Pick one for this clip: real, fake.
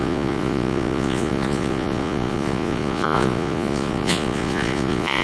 fake